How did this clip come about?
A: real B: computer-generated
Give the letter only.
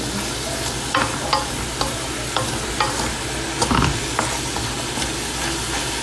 A